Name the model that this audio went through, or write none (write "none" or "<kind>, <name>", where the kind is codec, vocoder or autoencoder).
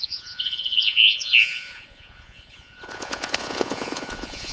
vocoder, Vocos